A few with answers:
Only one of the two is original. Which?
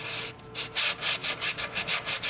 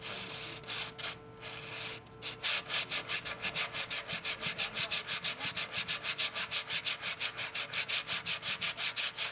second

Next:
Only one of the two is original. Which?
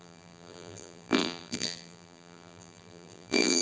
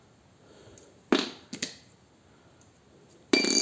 second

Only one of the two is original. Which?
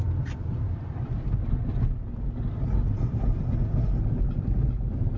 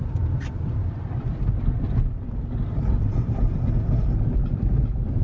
first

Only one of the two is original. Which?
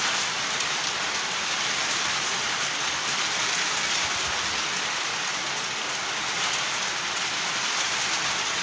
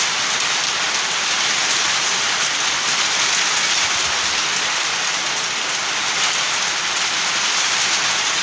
second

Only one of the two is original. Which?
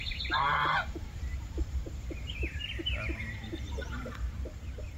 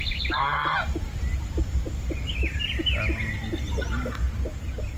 second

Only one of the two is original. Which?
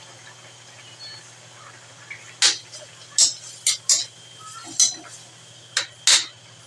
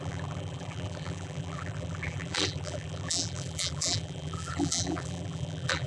first